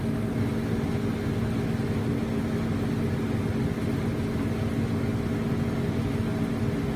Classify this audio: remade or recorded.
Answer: recorded